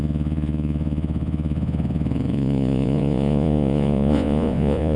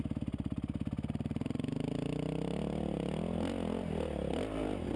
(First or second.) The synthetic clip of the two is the first